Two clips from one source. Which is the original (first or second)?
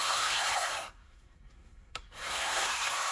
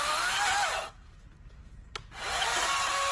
second